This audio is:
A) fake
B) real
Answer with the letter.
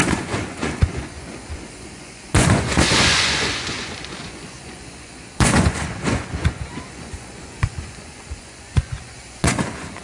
A